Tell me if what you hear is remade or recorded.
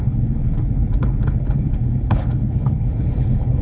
remade